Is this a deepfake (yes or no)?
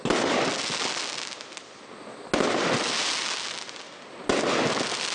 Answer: no